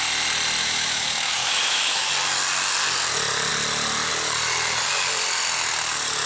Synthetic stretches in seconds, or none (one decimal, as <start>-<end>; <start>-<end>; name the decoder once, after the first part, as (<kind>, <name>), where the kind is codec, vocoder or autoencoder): 0.6-2.1 (autoencoder, DAC-VAE)